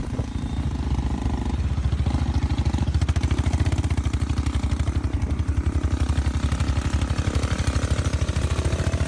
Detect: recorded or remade recorded